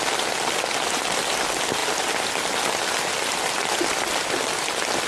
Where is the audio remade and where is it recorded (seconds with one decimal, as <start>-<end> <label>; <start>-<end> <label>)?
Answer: 0.0-5.1 recorded